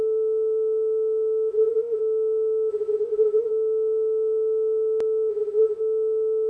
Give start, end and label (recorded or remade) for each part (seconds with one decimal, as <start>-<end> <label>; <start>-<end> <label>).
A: 0.0-1.5 recorded; 1.5-2.0 remade; 2.0-2.7 recorded; 2.7-3.5 remade; 3.5-5.3 recorded; 5.3-5.8 remade; 5.8-6.5 recorded